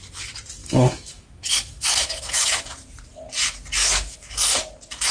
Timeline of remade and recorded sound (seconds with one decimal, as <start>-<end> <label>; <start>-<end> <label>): 0.0-0.6 recorded; 0.6-2.6 remade; 2.6-3.8 recorded; 3.8-4.3 remade; 4.3-5.1 recorded